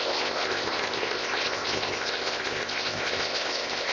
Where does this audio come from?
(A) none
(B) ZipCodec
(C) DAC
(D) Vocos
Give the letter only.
B